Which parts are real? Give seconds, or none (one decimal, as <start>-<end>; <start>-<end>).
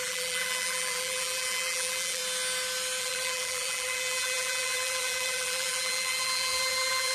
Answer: 2.2-3.0